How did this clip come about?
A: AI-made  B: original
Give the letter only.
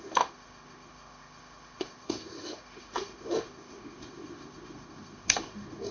A